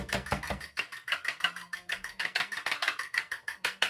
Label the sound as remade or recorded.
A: remade